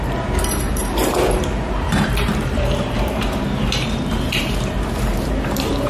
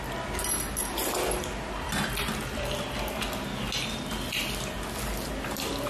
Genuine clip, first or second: second